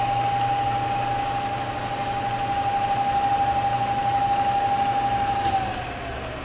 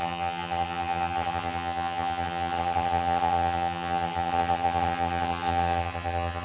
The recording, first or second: first